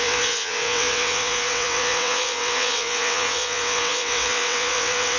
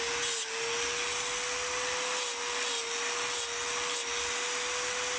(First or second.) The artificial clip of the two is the first